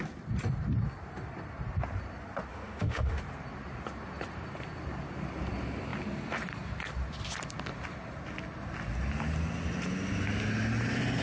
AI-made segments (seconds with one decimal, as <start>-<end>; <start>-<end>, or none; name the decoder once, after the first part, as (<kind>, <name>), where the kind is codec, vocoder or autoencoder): 2.5-3.2 (autoencoder, DAC-VAE)